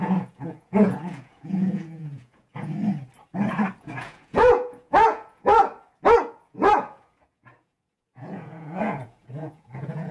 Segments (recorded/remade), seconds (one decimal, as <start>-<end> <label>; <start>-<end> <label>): 0.0-2.7 remade; 2.7-3.8 recorded; 3.8-5.6 remade; 5.6-6.2 recorded; 6.2-10.1 remade